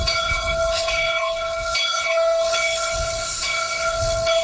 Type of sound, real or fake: fake